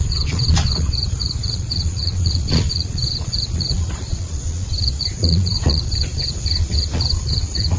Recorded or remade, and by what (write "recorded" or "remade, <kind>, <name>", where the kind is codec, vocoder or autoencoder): remade, vocoder, Vocos